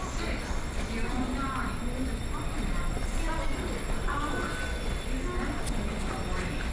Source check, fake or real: real